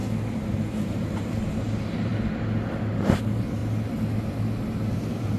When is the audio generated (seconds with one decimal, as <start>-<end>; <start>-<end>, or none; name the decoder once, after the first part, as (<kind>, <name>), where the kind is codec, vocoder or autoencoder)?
0.0-2.1 (vocoder, BigVGAN v2); 2.8-3.6; 4.3-5.4